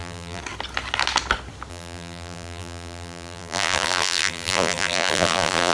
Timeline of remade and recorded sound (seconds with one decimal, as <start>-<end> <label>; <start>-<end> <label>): 0.0-0.4 remade; 0.4-1.7 recorded; 1.7-5.7 remade